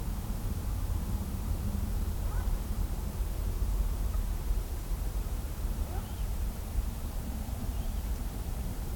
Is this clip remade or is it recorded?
remade